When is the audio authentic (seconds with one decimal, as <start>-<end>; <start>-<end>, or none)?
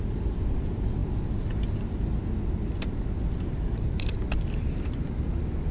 1.0-4.4